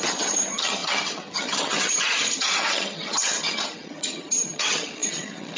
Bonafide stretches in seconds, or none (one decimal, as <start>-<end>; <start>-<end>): none